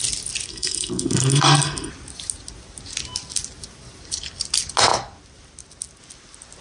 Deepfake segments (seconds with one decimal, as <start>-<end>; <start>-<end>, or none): 0.5-1.9